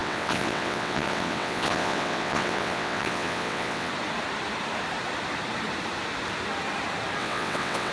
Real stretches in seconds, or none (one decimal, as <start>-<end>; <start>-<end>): 3.9-7.2